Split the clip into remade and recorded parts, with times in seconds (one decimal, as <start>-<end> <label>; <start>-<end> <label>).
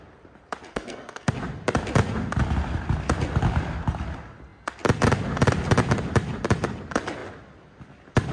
0.0-0.7 recorded; 0.7-1.3 remade; 1.3-8.3 recorded